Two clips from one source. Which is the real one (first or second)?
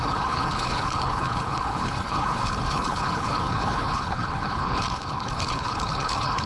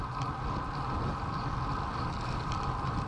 second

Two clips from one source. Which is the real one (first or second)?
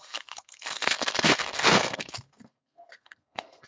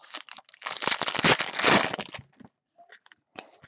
second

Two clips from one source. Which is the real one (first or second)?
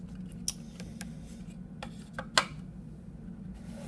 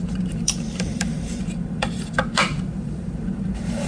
first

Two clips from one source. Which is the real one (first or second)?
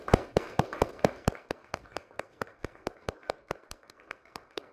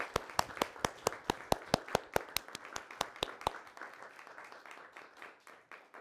second